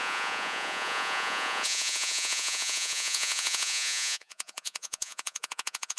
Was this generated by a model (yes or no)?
yes